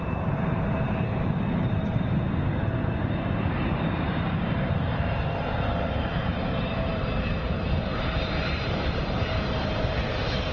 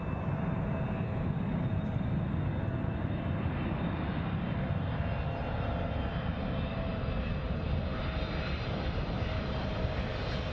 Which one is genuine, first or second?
second